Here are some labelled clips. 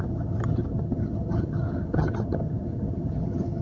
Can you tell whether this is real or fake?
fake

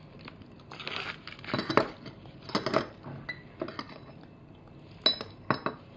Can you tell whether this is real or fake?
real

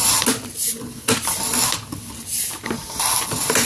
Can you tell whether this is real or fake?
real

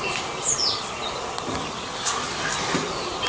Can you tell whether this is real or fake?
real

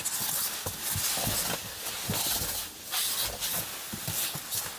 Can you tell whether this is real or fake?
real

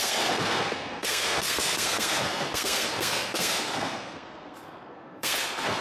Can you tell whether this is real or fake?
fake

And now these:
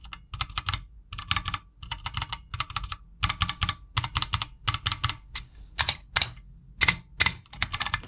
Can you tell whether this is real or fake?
real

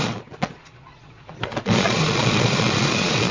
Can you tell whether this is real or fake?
fake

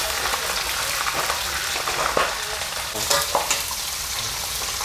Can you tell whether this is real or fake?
fake